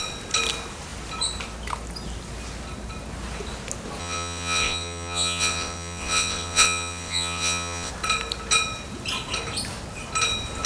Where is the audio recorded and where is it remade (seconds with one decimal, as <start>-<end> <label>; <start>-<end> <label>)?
0.0-4.0 recorded; 4.0-7.9 remade; 7.9-10.7 recorded